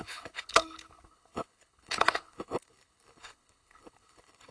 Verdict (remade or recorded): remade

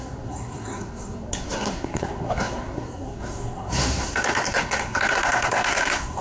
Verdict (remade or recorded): remade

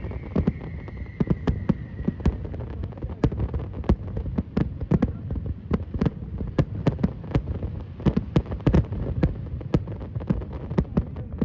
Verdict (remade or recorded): recorded